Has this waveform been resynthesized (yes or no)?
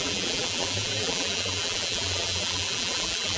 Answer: yes